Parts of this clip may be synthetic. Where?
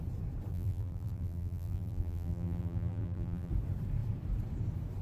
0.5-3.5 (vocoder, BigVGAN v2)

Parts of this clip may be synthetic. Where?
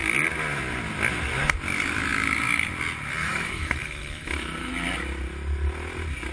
3.2-4.7 (autoencoder, DAC-VAE)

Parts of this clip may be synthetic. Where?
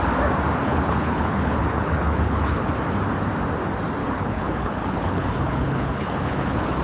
0.6-2.7 (codec, HILCodec); 4.0-6.8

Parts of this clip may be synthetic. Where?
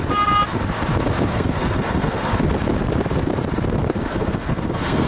1.3-2.5 (codec, SNAC); 3.8-5.1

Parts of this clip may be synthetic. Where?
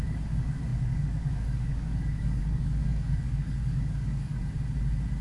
0.0-4.4 (codec, DAC)